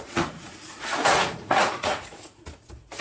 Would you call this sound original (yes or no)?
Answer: no